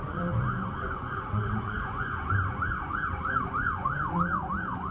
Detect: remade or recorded remade